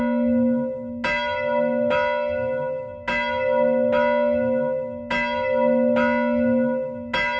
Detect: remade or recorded recorded